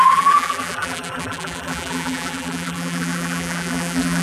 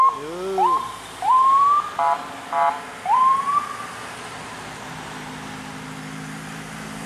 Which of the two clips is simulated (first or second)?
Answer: first